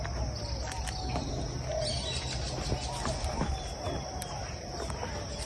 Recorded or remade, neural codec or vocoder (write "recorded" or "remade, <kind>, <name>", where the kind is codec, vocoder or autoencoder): recorded